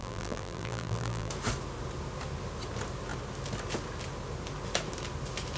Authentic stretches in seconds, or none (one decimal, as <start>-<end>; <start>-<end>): 1.3-5.6